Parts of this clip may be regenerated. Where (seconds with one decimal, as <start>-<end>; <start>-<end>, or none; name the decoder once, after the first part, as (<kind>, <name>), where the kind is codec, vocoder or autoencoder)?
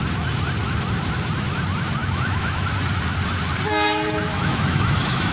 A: 2.0-2.7 (autoencoder, DAC-VAE); 4.3-5.3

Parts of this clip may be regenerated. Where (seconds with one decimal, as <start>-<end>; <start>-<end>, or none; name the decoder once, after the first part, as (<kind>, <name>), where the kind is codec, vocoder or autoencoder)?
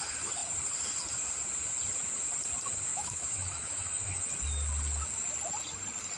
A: 2.9-4.2 (autoencoder, DAC-VAE)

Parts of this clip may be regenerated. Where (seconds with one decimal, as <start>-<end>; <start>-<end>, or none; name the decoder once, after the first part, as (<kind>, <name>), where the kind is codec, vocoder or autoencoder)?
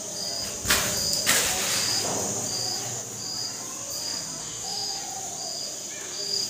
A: 4.4-5.0 (autoencoder, DAC-VAE)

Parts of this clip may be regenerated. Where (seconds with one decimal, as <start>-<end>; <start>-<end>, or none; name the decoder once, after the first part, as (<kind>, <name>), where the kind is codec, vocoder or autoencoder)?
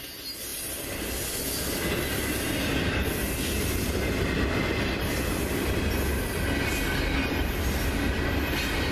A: none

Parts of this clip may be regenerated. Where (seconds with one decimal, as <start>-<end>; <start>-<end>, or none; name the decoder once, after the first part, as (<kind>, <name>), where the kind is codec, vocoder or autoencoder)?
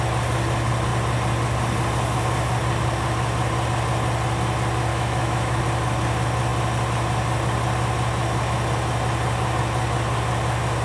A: 4.9-5.6 (autoencoder, DAC-VAE)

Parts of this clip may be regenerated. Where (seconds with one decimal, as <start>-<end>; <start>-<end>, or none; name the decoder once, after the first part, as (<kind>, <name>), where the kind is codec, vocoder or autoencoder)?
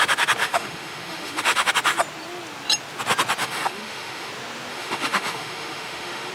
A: 0.4-1.7 (autoencoder, DAC-VAE); 3.4-4.3; 4.7-6.3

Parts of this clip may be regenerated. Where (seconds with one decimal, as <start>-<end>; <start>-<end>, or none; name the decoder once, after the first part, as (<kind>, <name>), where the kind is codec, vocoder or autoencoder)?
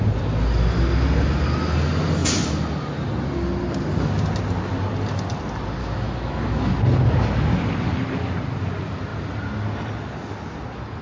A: 5.8-6.7 (autoencoder, DAC-VAE)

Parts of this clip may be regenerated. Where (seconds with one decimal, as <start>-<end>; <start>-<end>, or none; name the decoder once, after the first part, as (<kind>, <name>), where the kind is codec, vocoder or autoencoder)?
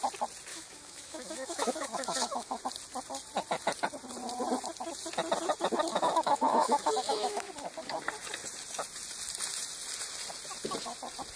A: 0.5-2.6 (autoencoder, DAC-VAE); 5.9-7.5